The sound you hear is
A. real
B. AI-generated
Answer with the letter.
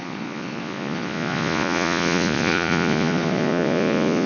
B